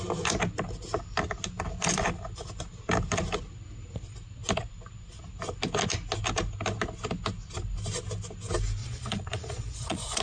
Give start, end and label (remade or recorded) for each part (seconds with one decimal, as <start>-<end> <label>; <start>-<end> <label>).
0.0-8.8 recorded; 8.8-10.2 remade